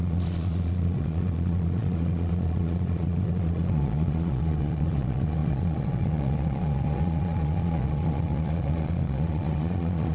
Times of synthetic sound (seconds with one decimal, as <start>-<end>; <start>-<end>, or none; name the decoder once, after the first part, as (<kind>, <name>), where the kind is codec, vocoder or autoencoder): 0.0-10.1 (vocoder, Vocos)